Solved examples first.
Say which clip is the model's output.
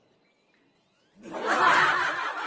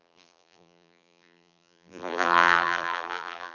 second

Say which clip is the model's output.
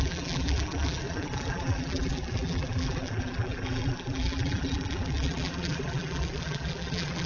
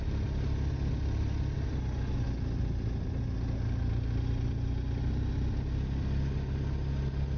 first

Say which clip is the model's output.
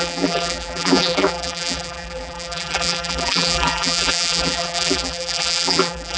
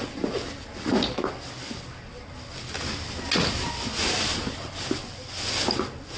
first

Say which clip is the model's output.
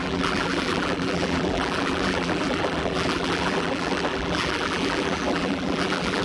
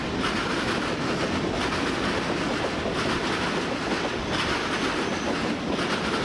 first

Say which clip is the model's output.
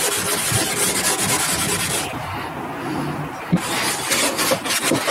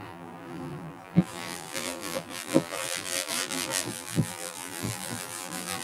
second